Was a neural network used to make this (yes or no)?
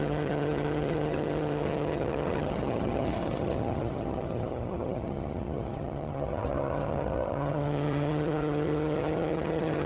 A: yes